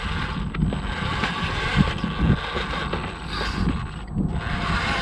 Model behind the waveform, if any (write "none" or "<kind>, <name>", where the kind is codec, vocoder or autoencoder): none